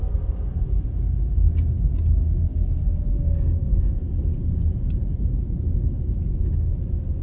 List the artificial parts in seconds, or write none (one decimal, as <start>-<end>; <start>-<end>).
2.5-3.7